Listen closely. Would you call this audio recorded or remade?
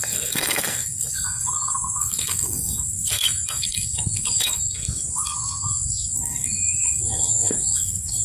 remade